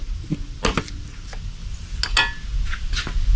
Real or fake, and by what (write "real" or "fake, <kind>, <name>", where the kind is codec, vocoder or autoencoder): real